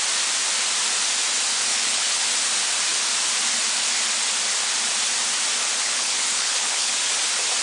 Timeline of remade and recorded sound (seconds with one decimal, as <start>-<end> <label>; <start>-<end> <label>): 0.0-1.7 recorded; 1.7-2.2 remade; 2.2-5.8 recorded; 5.8-6.9 remade; 6.9-7.6 recorded